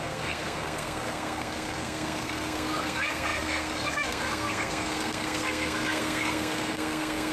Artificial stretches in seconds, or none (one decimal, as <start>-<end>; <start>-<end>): 0.0-7.3